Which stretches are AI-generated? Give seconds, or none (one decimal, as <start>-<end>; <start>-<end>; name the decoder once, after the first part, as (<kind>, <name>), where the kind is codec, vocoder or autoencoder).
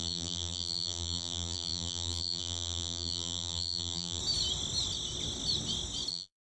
0.0-4.2 (vocoder, BigVGAN v2); 6.1-6.6